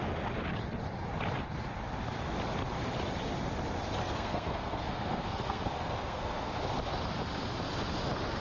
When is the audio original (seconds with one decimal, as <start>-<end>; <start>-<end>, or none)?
0.0-4.0; 6.6-8.4